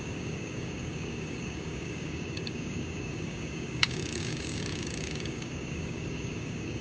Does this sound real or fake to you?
fake